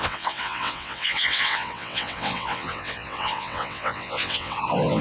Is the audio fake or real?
fake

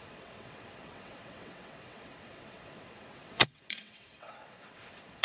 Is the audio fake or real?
fake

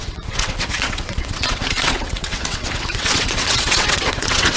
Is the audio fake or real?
fake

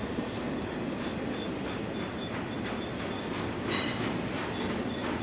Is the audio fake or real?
real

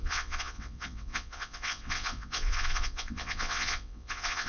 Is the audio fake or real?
fake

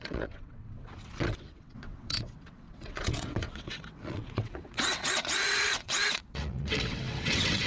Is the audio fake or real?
fake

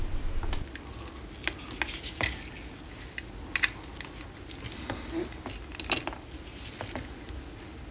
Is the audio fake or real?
real